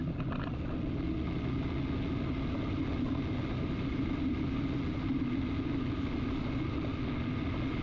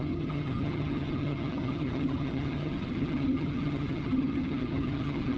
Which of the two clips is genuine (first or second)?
first